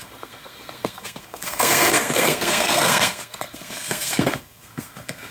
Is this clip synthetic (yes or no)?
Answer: yes